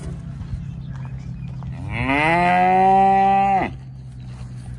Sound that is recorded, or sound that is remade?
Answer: recorded